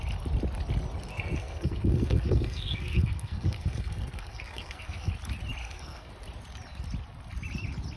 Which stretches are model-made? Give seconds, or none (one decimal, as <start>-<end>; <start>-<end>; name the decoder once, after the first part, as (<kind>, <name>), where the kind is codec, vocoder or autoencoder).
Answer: 1.1-5.1 (codec, SNAC); 5.6-6.1